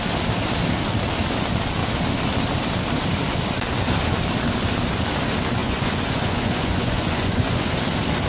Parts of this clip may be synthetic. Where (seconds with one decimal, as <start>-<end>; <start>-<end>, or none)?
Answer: 5.6-7.7